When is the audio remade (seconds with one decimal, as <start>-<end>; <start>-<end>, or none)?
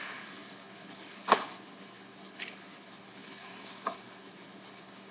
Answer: 0.0-5.1